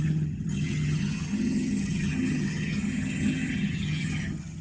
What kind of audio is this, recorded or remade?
remade